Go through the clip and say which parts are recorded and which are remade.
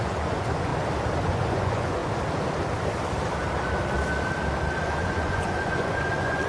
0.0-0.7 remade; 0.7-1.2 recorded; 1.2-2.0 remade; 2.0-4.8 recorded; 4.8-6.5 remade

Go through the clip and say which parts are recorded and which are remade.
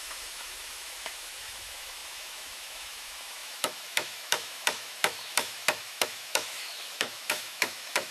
0.0-8.1 remade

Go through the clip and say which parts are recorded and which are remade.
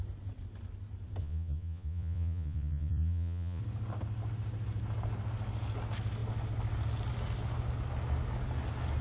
0.0-1.2 recorded; 1.2-3.6 remade; 3.6-9.0 recorded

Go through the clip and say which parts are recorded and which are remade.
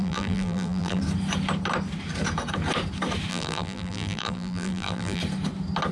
0.0-1.0 remade; 1.0-3.3 recorded; 3.3-5.2 remade; 5.2-5.9 recorded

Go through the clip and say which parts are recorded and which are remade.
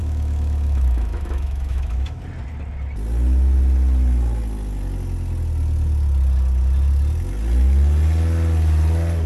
0.0-2.2 remade; 2.2-9.3 recorded